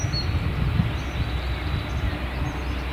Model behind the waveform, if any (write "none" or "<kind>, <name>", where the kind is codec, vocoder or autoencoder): none